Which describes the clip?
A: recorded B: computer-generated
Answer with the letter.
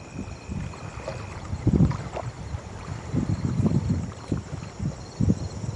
B